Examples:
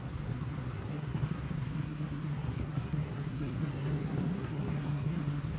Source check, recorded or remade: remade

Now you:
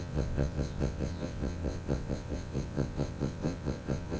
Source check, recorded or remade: remade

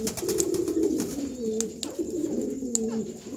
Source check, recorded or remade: recorded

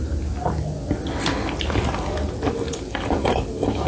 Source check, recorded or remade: recorded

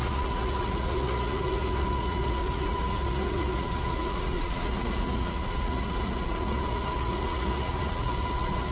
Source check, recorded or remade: remade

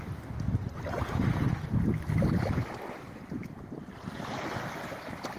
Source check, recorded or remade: recorded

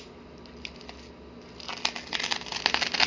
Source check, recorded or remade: recorded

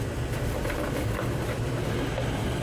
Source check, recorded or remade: recorded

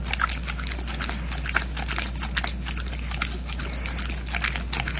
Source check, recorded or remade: recorded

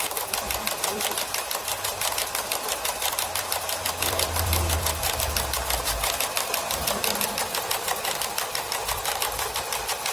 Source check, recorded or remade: remade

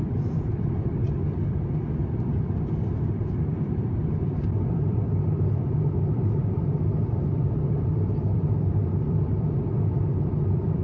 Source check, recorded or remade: remade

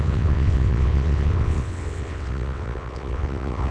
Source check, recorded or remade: remade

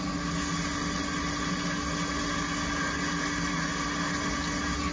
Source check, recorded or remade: recorded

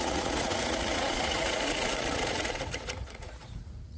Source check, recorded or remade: remade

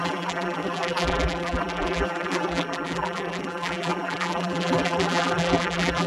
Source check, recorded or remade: remade